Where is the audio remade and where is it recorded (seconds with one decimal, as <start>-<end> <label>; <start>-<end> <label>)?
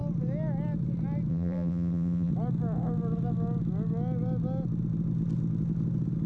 0.0-1.3 recorded; 1.3-2.3 remade; 2.3-6.3 recorded